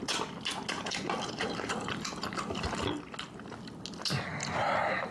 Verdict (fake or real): real